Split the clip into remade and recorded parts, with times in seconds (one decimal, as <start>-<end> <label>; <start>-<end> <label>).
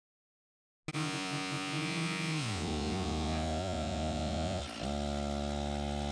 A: 0.0-0.9 recorded; 0.9-4.6 remade; 4.6-6.1 recorded